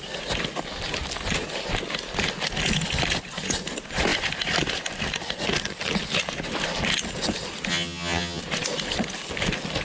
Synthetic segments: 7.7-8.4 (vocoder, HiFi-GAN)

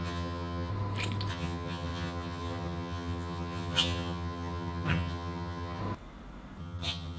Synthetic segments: 0.0-0.7 (vocoder, HiFi-GAN); 1.3-5.8; 6.6-7.2